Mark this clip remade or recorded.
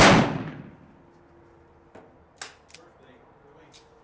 recorded